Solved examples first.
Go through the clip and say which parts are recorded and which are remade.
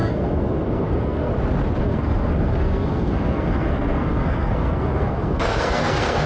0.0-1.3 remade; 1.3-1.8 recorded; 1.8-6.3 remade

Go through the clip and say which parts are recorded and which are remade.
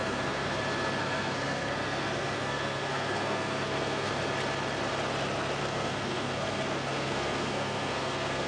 0.0-0.6 remade; 0.6-1.0 recorded; 1.0-4.1 remade; 4.1-5.6 recorded; 5.6-8.5 remade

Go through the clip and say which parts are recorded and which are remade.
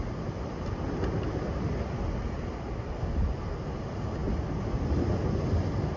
0.0-6.0 recorded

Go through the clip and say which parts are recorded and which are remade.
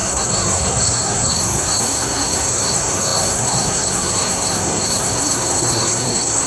0.0-6.5 remade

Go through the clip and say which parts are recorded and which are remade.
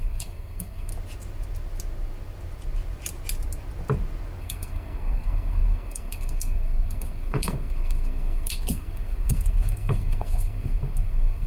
0.0-0.9 remade; 0.9-4.4 recorded; 4.4-11.5 remade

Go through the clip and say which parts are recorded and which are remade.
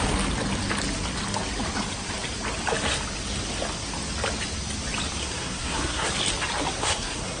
0.0-5.2 recorded; 5.2-6.1 remade; 6.1-6.8 recorded; 6.8-7.4 remade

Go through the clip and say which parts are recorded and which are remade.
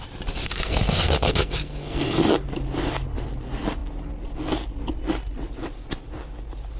0.0-0.4 recorded; 0.4-2.2 remade; 2.2-6.8 recorded